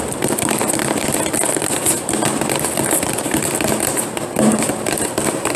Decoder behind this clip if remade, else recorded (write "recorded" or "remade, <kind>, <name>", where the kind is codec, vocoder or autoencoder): recorded